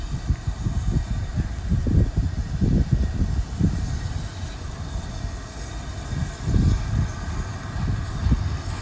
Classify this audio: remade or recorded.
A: recorded